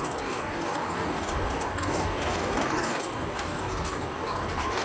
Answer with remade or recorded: remade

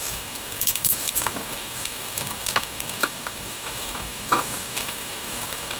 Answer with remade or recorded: remade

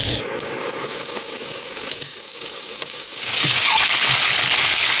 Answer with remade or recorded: remade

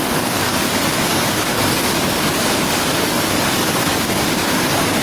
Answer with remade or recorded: remade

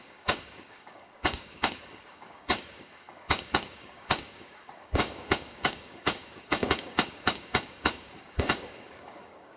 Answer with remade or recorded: remade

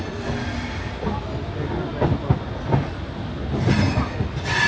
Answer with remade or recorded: recorded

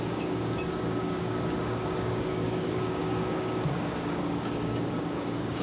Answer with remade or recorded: remade